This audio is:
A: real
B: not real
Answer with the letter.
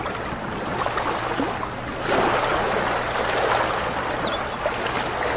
A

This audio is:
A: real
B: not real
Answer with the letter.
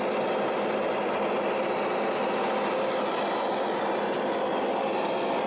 A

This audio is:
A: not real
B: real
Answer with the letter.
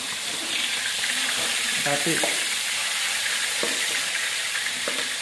A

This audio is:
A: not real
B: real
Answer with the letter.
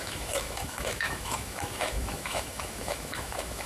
A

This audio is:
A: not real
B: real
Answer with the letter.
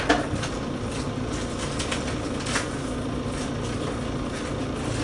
B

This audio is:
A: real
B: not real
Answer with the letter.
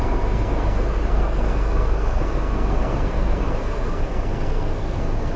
B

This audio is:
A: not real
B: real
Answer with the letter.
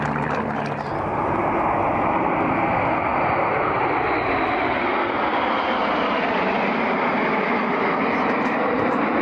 B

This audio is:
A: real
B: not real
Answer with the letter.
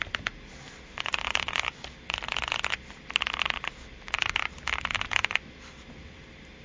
A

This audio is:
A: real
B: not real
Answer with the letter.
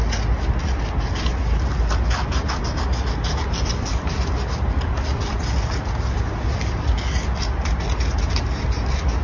A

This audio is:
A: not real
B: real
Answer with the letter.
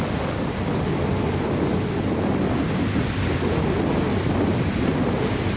B